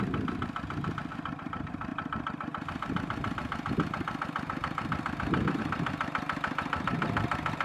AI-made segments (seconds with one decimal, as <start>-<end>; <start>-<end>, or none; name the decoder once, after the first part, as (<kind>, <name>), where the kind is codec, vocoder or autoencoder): none